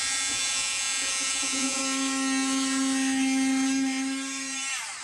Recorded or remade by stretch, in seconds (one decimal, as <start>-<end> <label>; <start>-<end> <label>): 0.0-1.8 remade; 1.8-5.0 recorded